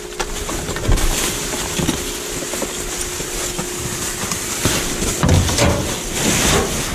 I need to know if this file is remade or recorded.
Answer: recorded